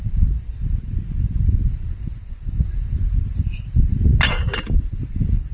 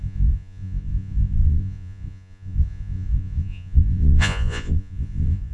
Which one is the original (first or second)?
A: first